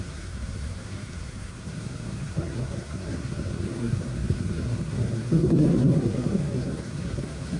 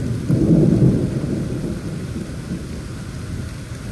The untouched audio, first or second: second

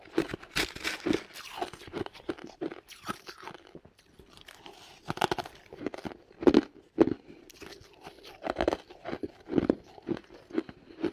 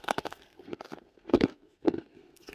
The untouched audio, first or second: first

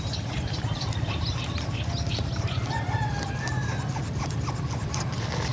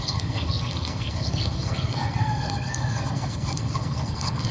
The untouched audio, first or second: first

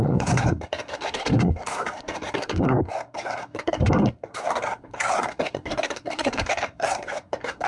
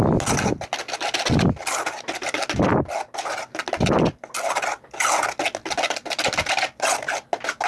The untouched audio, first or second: second